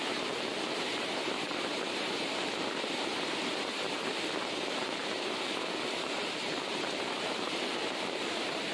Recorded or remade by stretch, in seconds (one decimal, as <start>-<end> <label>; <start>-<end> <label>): 0.0-4.1 remade; 4.1-4.6 recorded; 4.6-5.0 remade; 5.0-5.9 recorded; 5.9-8.7 remade